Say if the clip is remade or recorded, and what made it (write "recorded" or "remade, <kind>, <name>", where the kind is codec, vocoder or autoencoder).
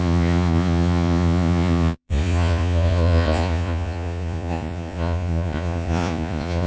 remade, vocoder, Vocos